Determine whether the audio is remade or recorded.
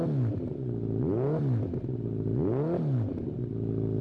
recorded